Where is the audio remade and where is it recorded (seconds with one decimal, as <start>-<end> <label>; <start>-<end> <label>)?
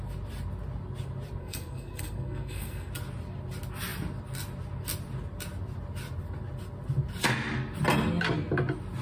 0.0-1.4 recorded; 1.4-2.9 remade; 2.9-9.0 recorded